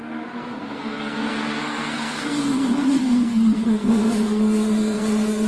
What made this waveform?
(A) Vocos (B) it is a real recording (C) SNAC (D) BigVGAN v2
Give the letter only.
C